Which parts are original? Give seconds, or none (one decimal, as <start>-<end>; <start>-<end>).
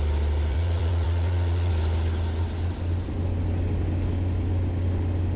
0.0-0.5; 1.7-5.4